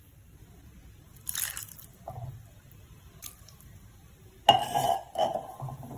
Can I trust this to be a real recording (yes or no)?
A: no